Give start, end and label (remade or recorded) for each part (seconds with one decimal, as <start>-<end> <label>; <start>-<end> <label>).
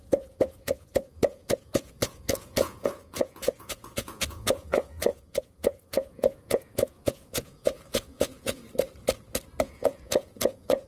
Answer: 0.0-8.6 remade; 8.6-9.6 recorded; 9.6-10.9 remade